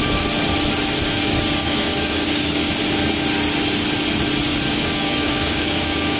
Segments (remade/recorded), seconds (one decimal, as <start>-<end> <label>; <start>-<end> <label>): 0.0-1.6 recorded; 1.6-2.7 remade; 2.7-4.7 recorded; 4.7-6.2 remade